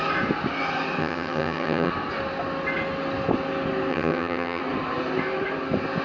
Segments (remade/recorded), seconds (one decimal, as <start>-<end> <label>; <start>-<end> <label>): 0.0-1.0 recorded; 1.0-1.9 remade; 1.9-3.9 recorded; 3.9-4.6 remade; 4.6-6.0 recorded